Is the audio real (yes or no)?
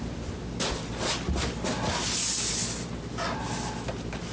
yes